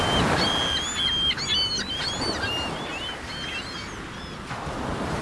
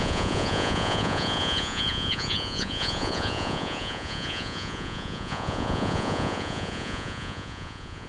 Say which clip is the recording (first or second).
first